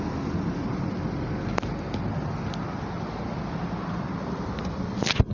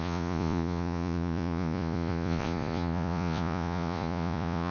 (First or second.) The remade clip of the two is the second